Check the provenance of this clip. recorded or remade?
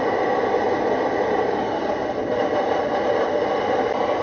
recorded